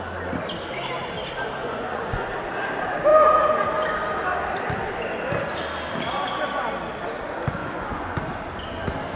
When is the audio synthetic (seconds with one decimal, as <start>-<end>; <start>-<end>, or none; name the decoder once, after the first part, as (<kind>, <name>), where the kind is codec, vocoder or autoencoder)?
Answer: 1.6-2.3 (vocoder, Vocos); 7.6-8.2